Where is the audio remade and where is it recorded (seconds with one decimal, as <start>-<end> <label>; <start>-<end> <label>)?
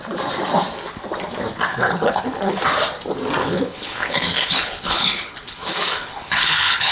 0.0-1.7 recorded; 1.7-2.6 remade; 2.6-3.4 recorded; 3.4-6.9 remade